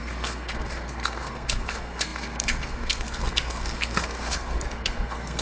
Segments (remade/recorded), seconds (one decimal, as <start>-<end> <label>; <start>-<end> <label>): 0.0-5.4 remade